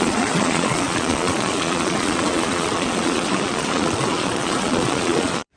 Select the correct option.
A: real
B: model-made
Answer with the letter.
B